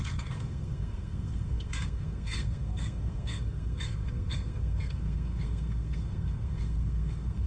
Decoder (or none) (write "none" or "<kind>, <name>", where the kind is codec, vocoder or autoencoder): codec, SNAC